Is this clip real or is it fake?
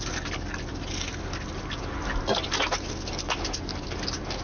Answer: real